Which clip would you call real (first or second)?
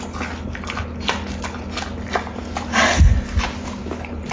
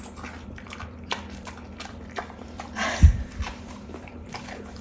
first